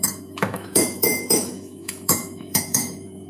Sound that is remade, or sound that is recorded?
remade